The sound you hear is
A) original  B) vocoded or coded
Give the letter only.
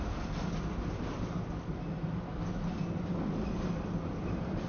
A